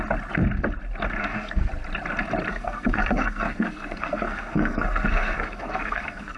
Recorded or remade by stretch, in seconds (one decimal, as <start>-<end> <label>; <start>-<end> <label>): 0.0-1.2 recorded; 1.2-1.7 remade; 1.7-2.5 recorded; 2.5-6.4 remade